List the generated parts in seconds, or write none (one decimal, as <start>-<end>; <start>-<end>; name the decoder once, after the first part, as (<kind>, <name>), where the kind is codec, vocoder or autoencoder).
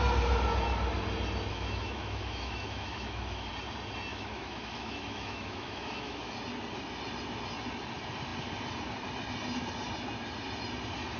1.5-3.5 (autoencoder, DAC-VAE); 4.1-6.3